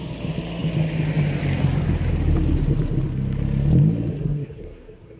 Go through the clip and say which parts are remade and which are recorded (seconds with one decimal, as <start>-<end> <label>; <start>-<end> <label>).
0.0-4.1 recorded; 4.1-5.2 remade